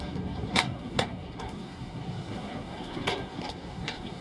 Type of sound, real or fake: fake